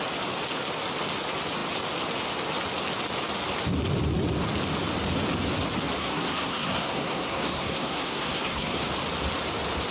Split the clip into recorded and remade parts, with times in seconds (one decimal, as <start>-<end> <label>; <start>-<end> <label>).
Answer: 0.0-6.0 recorded; 6.0-8.9 remade; 8.9-9.9 recorded